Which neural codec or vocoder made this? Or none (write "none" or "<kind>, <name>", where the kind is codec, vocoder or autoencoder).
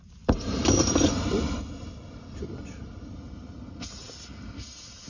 none